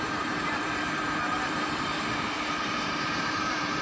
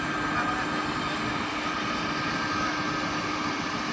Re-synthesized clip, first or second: first